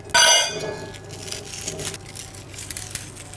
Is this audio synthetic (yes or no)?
no